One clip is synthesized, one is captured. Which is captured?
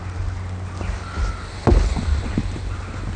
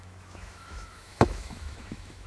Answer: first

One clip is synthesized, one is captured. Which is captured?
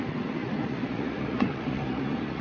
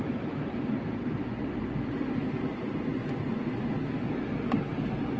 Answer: second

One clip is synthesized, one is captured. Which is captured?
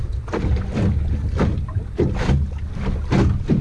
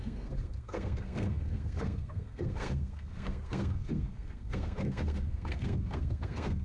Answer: first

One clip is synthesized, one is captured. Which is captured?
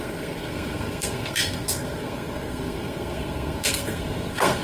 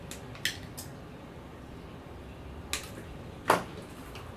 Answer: second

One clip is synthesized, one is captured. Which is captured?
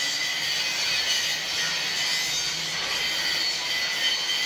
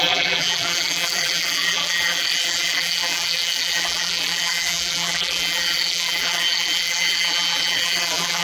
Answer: first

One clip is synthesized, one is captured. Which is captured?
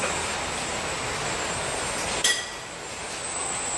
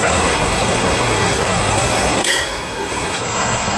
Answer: first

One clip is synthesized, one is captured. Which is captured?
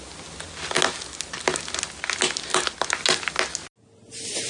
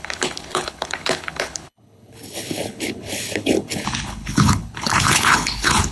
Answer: first